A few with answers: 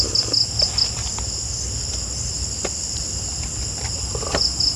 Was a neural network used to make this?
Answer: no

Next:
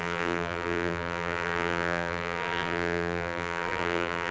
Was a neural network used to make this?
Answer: yes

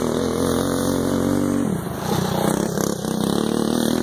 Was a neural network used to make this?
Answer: no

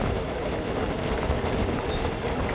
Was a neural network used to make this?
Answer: no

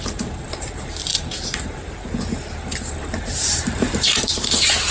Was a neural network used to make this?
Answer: yes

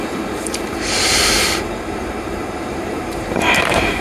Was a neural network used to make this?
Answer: yes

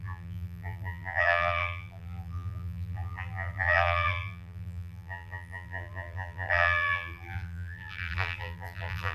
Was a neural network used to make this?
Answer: yes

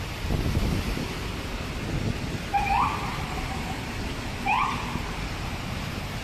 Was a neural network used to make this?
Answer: no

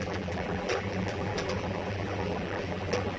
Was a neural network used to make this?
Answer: yes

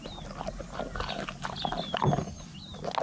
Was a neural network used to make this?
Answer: no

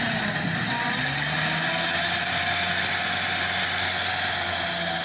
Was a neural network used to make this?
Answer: no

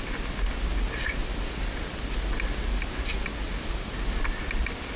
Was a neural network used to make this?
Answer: no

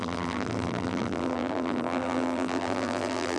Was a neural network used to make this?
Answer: yes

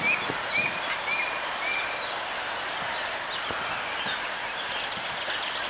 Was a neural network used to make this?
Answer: no